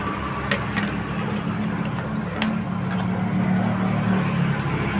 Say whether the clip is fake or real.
real